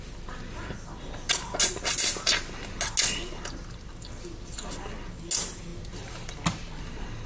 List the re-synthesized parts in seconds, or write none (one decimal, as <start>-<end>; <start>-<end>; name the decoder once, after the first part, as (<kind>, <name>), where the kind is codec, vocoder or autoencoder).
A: none